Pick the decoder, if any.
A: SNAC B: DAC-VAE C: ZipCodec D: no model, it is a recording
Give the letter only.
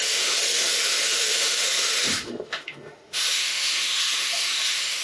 B